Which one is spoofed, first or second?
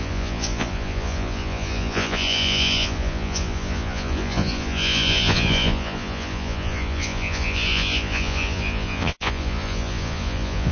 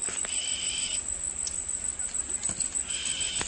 first